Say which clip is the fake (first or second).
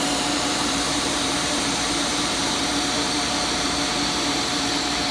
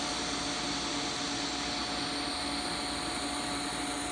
first